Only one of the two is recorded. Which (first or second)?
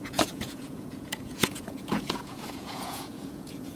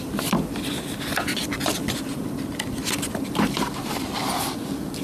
second